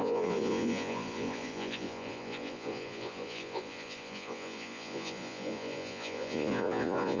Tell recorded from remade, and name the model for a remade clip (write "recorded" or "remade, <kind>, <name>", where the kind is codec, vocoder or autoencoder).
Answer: remade, vocoder, Vocos